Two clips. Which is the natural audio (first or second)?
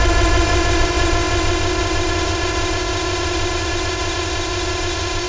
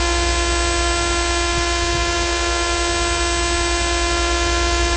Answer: second